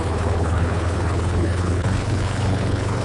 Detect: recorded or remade remade